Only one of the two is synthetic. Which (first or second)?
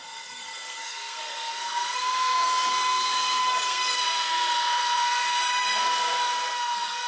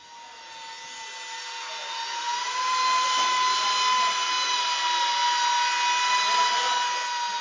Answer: first